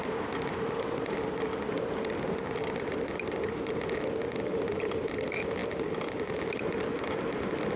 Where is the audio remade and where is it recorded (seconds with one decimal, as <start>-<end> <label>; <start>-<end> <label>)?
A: 0.0-7.8 recorded